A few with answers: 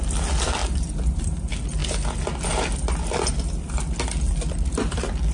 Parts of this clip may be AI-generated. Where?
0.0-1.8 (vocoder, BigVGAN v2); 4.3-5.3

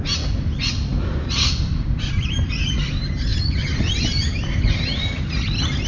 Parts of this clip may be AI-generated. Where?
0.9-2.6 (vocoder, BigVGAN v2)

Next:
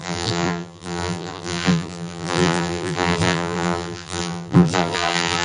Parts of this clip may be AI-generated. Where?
0.0-5.4 (vocoder, BigVGAN v2)

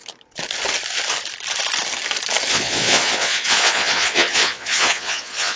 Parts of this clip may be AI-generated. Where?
2.5-5.6 (vocoder, Vocos)

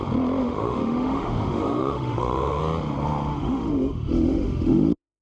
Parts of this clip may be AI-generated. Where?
0.4-2.6 (autoencoder, DAC-VAE); 3.3-5.2

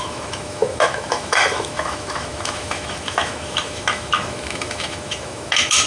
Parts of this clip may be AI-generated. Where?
0.0-5.9 (autoencoder, DAC-VAE)

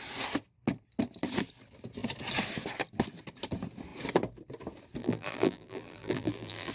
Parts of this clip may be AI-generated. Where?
5.0-6.7 (vocoder, BigVGAN v2)

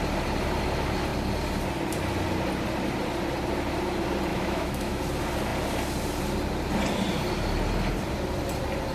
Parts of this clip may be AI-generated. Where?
4.3-5.0 (autoencoder, DAC-VAE)